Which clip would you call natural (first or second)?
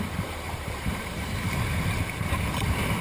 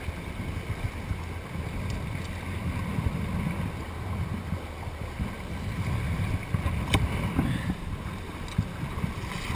second